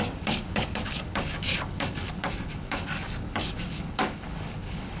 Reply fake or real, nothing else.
fake